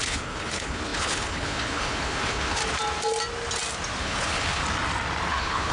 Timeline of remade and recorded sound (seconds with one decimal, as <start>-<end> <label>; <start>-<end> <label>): 0.0-2.6 remade; 2.6-4.0 recorded; 4.0-4.6 remade; 4.6-5.3 recorded; 5.3-5.7 remade